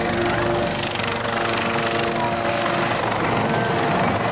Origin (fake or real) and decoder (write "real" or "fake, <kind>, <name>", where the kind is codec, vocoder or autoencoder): real